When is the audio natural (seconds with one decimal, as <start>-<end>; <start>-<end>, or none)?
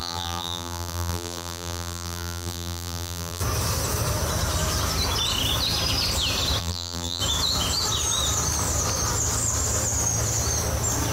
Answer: 3.4-6.6; 7.2-11.1